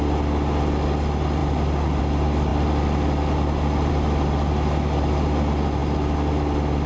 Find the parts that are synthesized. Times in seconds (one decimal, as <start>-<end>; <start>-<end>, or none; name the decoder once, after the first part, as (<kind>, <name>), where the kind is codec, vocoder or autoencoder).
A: none